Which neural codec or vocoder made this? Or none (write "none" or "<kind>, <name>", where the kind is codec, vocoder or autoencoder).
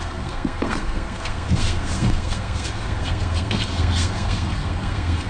codec, SNAC